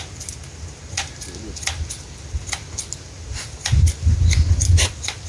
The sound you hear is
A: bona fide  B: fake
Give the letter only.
A